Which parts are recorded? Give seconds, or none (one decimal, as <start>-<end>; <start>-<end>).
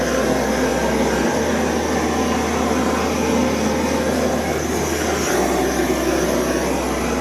0.0-7.2